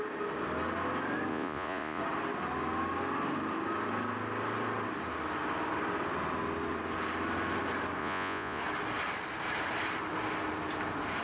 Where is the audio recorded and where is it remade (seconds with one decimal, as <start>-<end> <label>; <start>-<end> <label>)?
0.0-1.3 recorded; 1.3-2.0 remade; 2.0-8.0 recorded; 8.0-8.6 remade; 8.6-11.2 recorded